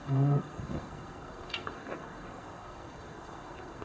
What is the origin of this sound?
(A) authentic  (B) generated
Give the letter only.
B